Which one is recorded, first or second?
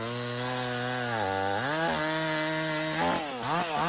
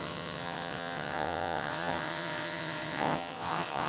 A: first